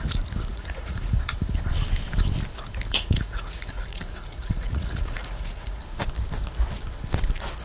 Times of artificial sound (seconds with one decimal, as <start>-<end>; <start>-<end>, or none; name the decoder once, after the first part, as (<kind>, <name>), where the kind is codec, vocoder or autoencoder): 0.5-1.1 (vocoder, Vocos); 2.9-5.8